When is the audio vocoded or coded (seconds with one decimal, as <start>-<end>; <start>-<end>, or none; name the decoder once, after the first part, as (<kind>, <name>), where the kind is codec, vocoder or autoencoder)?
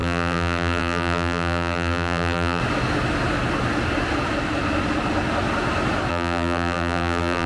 0.0-2.6 (vocoder, BigVGAN v2); 6.1-7.5